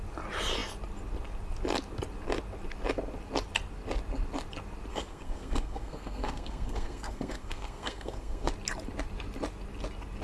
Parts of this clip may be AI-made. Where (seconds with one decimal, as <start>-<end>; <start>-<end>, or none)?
4.9-8.5